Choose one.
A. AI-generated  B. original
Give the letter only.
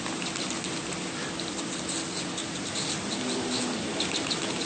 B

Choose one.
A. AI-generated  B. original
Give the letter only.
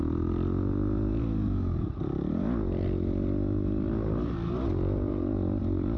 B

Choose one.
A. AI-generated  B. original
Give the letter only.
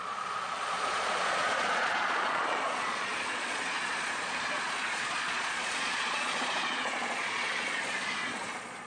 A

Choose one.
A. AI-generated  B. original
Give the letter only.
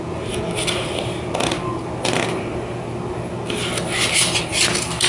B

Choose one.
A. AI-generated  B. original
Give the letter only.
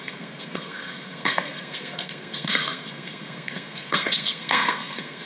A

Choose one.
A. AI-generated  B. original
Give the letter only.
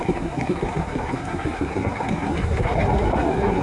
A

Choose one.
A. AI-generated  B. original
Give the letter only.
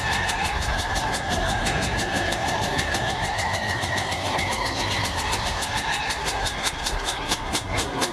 A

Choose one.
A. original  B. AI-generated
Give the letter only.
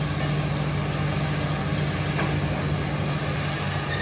A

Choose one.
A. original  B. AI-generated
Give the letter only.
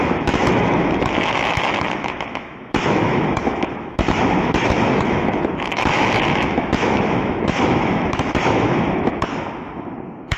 B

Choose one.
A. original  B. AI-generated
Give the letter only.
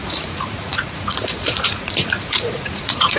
B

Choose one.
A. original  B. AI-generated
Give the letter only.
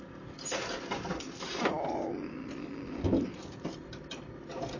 A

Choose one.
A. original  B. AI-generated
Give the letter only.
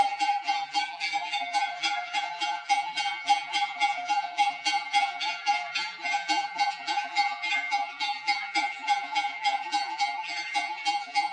B